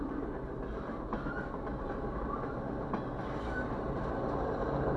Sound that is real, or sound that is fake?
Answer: real